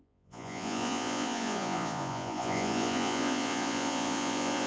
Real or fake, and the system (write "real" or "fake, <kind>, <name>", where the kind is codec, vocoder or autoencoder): fake, vocoder, Vocos